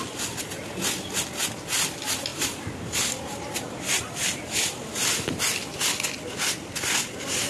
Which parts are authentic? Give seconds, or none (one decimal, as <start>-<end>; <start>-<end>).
0.0-2.3; 3.1-3.5; 5.5-7.5